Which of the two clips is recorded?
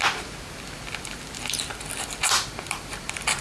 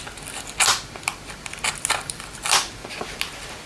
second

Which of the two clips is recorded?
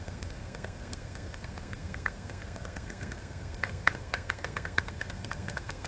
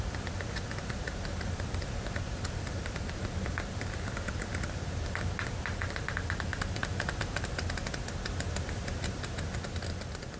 second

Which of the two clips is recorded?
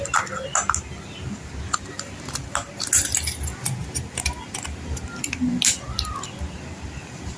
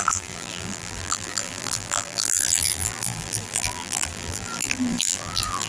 first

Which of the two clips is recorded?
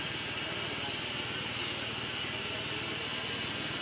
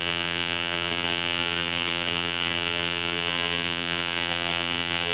first